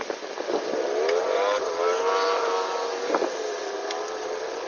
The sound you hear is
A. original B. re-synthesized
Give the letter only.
A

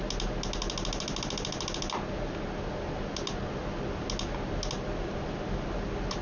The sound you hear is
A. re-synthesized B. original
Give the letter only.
B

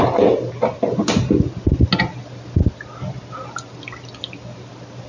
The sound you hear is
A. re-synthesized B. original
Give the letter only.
B